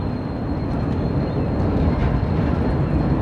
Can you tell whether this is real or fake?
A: real